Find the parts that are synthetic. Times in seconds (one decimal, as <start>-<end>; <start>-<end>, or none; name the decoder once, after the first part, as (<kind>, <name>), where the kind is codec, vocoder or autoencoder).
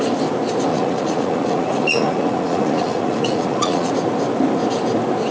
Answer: 0.7-3.9 (vocoder, Vocos)